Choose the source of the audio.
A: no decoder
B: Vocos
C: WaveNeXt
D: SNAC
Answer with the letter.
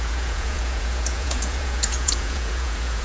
B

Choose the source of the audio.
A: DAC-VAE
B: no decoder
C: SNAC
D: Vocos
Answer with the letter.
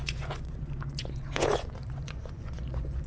D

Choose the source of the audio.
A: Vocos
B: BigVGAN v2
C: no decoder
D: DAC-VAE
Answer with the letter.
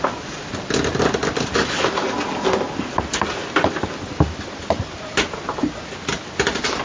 C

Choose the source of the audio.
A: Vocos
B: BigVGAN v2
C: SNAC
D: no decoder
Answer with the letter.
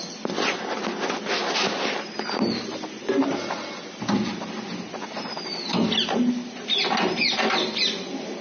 D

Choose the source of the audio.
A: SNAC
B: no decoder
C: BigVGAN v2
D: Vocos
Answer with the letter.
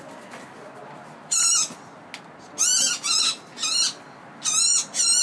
B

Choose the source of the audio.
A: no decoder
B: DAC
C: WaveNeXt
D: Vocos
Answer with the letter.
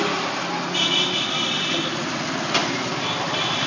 A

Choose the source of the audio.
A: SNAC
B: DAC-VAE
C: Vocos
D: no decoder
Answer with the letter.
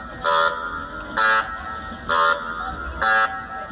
D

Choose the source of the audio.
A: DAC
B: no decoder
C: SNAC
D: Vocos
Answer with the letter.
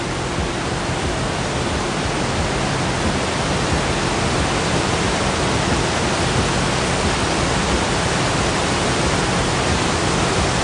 B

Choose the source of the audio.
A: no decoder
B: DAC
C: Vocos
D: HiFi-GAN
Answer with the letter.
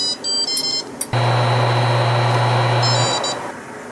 A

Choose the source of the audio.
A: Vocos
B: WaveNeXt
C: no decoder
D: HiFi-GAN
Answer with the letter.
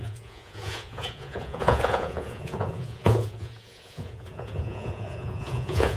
A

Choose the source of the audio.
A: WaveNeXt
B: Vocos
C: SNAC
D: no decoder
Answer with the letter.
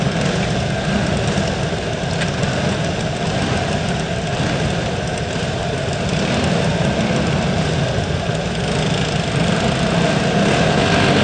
D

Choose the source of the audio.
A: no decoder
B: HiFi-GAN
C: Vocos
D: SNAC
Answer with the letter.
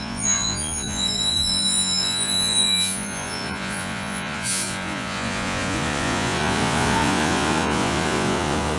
C